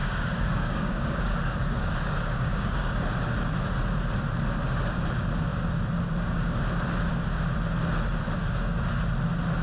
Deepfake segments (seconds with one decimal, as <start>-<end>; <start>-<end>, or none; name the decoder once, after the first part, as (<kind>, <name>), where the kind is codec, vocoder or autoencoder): 0.0-3.0 (codec, DAC); 8.4-9.0